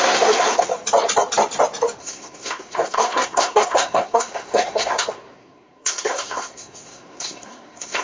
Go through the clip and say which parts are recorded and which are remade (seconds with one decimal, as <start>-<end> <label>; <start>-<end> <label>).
0.0-0.7 remade; 0.7-2.0 recorded; 2.0-8.0 remade